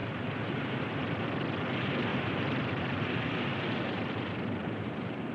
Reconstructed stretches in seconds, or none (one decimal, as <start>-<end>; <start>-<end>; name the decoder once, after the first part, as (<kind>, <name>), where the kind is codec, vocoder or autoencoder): 0.0-1.0 (vocoder, BigVGAN v2); 2.1-5.3